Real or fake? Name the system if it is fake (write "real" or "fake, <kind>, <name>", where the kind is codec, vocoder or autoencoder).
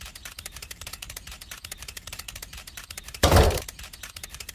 fake, vocoder, BigVGAN v2